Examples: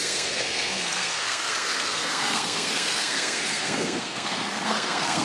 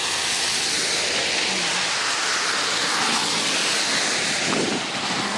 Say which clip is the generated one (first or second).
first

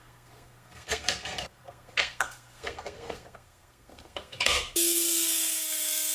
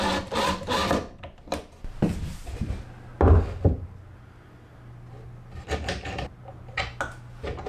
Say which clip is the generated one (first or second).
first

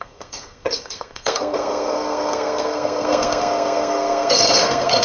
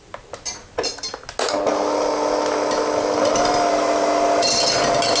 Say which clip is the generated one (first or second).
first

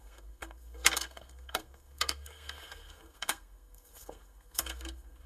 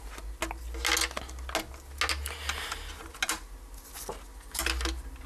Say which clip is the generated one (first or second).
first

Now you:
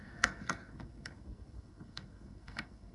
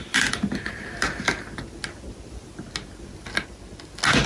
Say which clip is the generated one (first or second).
first